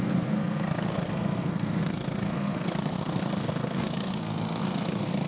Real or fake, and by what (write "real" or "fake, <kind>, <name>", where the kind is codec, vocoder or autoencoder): fake, codec, SNAC